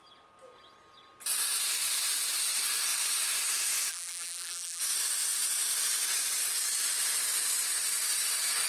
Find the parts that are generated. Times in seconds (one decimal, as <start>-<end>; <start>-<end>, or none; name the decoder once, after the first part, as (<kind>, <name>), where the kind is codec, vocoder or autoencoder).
3.9-4.8 (vocoder, BigVGAN v2)